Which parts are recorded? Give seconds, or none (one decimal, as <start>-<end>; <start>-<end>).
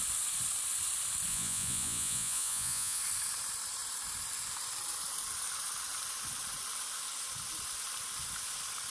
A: 0.0-1.3; 3.0-8.9